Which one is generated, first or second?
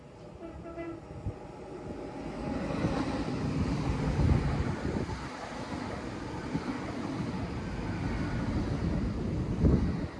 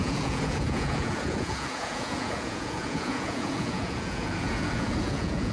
second